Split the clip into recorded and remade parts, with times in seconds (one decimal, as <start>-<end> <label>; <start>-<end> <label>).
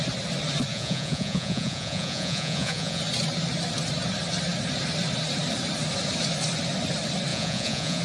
0.0-0.7 recorded; 0.7-3.0 remade; 3.0-7.3 recorded; 7.3-8.0 remade